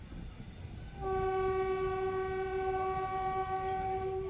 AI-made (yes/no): no